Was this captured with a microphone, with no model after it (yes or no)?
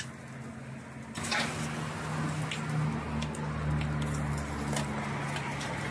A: yes